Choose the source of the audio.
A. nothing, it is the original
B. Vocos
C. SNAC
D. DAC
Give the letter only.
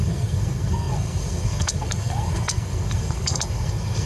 C